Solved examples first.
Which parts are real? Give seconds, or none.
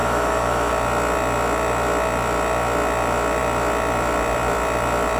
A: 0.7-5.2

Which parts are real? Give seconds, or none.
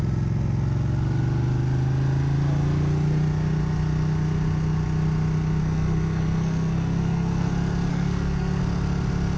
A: 0.0-5.6; 7.5-7.9; 8.6-9.4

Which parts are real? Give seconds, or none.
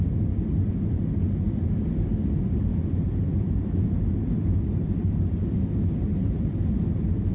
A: 0.0-2.7; 3.5-7.3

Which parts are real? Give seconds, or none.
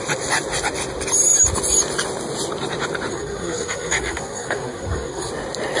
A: 0.0-3.1; 5.3-5.8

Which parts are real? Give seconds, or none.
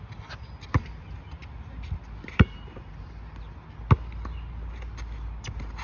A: 0.0-5.8